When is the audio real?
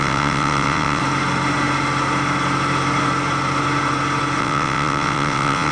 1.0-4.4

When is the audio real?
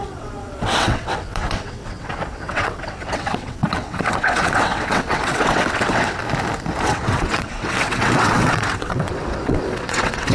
6.2-6.8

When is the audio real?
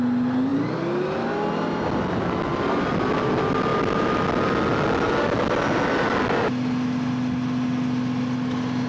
0.0-8.9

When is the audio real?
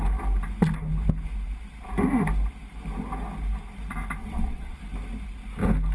0.0-4.2; 4.8-5.9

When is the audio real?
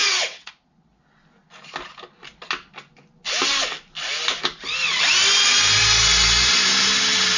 0.5-7.4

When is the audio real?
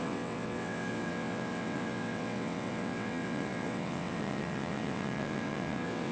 none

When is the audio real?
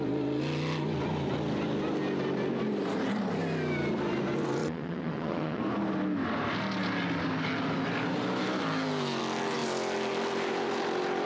0.0-4.6; 5.6-11.3